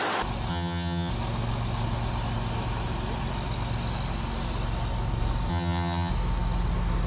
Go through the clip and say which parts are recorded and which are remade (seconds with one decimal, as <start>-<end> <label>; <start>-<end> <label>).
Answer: 0.0-0.5 recorded; 0.5-1.1 remade; 1.1-5.5 recorded; 5.5-6.1 remade; 6.1-7.1 recorded